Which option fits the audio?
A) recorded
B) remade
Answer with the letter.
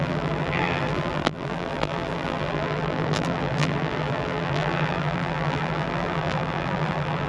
B